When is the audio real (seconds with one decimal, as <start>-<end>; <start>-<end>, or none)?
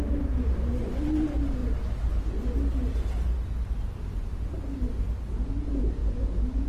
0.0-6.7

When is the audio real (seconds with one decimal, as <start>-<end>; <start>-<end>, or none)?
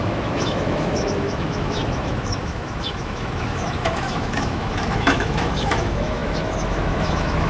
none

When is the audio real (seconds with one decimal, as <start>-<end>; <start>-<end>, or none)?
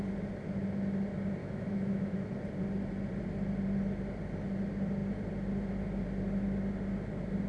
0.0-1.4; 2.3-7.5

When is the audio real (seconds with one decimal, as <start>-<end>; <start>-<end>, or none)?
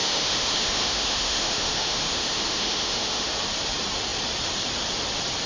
3.3-5.5